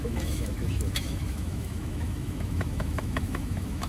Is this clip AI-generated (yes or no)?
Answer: yes